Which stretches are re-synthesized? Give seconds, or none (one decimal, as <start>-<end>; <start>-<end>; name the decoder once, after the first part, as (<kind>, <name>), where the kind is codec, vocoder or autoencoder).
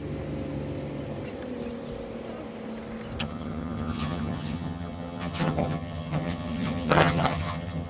3.2-7.9 (vocoder, HiFi-GAN)